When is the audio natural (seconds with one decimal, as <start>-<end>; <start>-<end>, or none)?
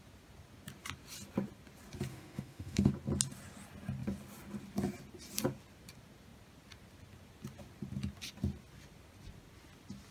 0.0-2.1; 2.9-10.1